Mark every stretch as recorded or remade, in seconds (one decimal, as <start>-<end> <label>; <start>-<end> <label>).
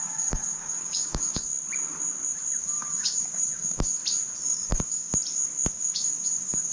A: 0.0-1.5 remade; 1.5-2.6 recorded; 2.6-4.0 remade; 4.0-4.5 recorded; 4.5-5.2 remade; 5.2-5.7 recorded; 5.7-6.7 remade